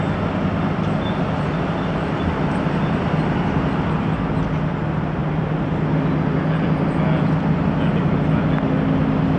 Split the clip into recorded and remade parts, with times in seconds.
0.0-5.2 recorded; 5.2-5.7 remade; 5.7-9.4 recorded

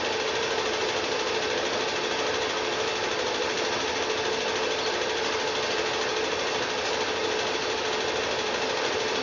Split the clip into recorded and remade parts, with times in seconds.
0.0-9.2 recorded